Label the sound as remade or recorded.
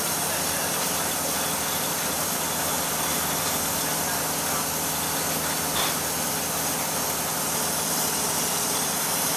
recorded